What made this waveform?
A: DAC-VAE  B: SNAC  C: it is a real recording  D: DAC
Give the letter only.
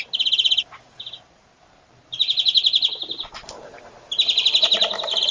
C